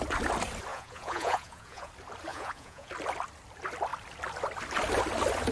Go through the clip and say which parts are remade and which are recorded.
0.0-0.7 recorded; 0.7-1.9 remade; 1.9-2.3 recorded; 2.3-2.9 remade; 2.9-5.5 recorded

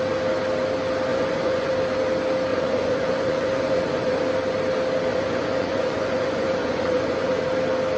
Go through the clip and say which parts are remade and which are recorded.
0.0-1.1 recorded; 1.1-1.7 remade; 1.7-2.5 recorded; 2.5-4.2 remade; 4.2-5.1 recorded; 5.1-7.4 remade; 7.4-8.0 recorded